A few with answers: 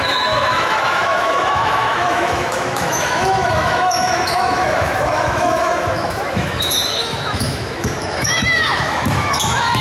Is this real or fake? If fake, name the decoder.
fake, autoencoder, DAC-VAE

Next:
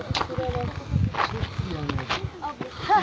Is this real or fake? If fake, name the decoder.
real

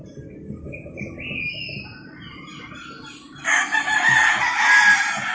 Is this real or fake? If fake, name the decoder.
real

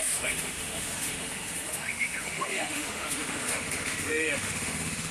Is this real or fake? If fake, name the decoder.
fake, autoencoder, DAC-VAE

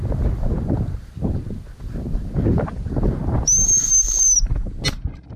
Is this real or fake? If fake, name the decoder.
real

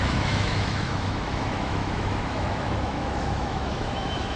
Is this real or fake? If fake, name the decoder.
fake, autoencoder, DAC-VAE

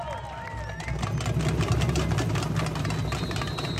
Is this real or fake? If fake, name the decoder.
real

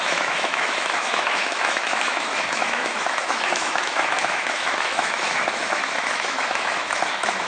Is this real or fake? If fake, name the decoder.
fake, autoencoder, DAC-VAE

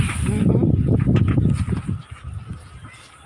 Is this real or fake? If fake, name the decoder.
real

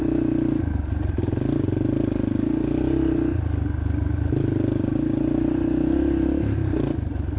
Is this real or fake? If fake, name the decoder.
real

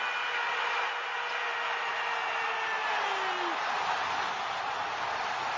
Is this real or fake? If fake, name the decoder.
real